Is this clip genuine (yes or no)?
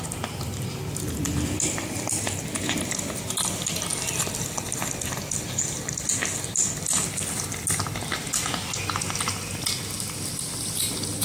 yes